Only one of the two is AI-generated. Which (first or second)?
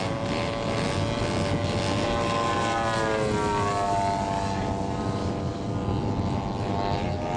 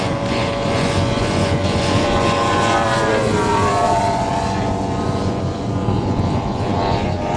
second